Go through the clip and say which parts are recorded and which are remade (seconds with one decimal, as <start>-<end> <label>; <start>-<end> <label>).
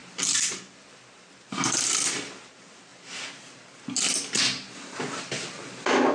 0.0-6.1 recorded